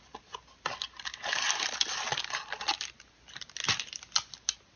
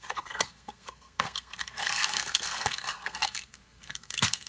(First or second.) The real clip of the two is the first